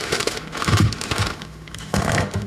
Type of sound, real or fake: fake